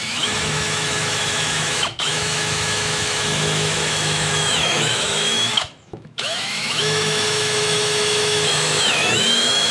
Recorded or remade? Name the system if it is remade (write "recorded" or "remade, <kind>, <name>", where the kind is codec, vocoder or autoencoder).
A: remade, autoencoder, DAC-VAE